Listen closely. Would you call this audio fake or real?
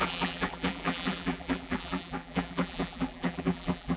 fake